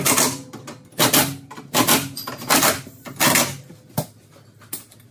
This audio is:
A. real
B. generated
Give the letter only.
A